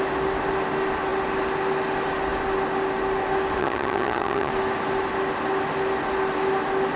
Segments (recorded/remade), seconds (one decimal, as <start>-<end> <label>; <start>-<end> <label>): 0.0-3.6 recorded; 3.6-4.5 remade; 4.5-7.0 recorded